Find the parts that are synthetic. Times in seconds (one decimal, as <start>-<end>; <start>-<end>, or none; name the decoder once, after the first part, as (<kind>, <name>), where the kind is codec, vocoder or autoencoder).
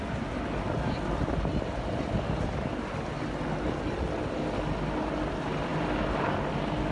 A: none